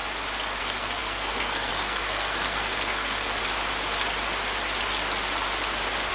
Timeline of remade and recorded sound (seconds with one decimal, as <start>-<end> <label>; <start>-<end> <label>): 0.0-0.6 recorded; 0.6-3.4 remade; 3.4-6.1 recorded